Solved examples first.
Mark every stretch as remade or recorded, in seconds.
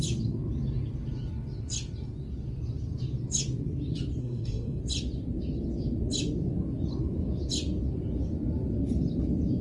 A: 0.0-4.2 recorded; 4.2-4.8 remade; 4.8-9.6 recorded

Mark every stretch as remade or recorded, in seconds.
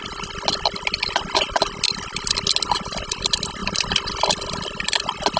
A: 0.0-5.4 recorded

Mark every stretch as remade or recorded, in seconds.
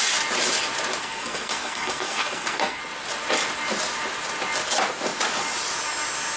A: 0.0-1.0 recorded; 1.0-2.8 remade; 2.8-6.4 recorded